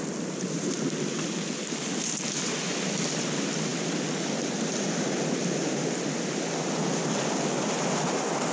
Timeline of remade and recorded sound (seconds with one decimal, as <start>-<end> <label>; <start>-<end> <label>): 0.0-8.5 recorded